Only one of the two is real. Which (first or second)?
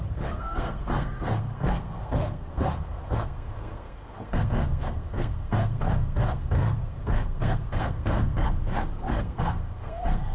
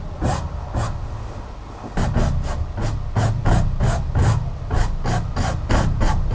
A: second